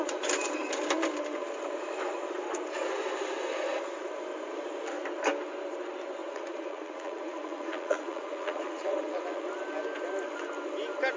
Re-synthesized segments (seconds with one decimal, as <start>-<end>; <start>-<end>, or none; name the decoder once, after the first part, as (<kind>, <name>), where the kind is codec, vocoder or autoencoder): 6.2-9.5 (vocoder, Vocos)